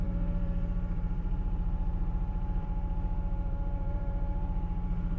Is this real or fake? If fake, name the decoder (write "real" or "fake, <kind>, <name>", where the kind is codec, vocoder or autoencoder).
fake, vocoder, BigVGAN v2